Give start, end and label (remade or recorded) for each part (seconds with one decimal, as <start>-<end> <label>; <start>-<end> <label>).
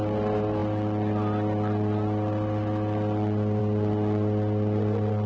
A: 0.0-5.3 recorded